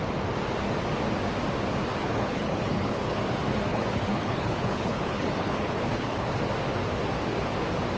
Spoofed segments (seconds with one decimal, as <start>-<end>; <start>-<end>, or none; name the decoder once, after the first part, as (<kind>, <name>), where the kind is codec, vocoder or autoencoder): 1.9-3.2 (codec, HILCodec); 3.7-6.4